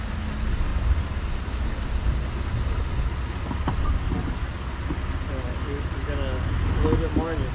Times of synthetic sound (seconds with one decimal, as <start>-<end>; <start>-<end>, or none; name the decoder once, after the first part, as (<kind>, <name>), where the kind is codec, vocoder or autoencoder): none